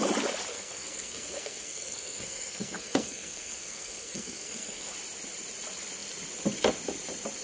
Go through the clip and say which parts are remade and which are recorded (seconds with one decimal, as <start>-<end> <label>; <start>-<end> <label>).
0.0-0.5 recorded; 0.5-4.9 remade; 4.9-7.4 recorded